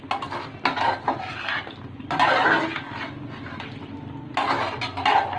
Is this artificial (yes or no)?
no